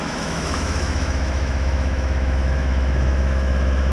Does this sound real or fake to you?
fake